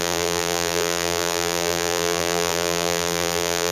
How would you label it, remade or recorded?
remade